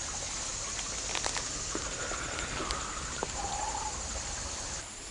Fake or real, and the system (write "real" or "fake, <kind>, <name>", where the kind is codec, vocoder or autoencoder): real